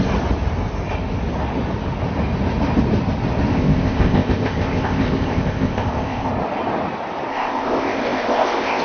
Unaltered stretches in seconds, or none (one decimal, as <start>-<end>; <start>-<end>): 0.0-3.5; 6.3-7.3